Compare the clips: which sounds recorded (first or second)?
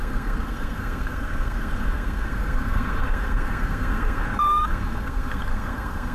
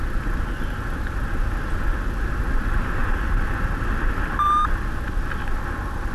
second